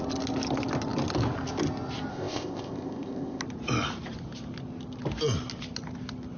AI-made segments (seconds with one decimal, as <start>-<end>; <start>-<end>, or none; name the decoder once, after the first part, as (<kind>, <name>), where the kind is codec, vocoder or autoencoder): 2.1-3.4 (codec, ZipCodec)